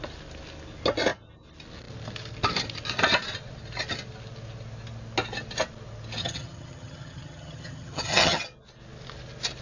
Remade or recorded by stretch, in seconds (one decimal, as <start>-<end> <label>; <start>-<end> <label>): 0.0-6.2 recorded; 6.2-8.4 remade; 8.4-9.6 recorded